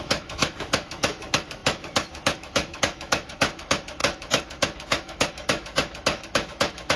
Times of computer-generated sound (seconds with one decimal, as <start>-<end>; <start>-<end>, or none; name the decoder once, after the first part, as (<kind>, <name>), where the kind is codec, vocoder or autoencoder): 0.0-7.0 (autoencoder, DAC-VAE)